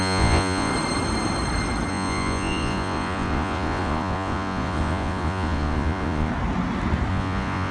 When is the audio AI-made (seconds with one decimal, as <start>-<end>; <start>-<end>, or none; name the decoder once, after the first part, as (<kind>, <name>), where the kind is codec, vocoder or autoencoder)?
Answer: 0.0-0.7 (vocoder, Vocos); 1.9-6.3; 7.1-7.7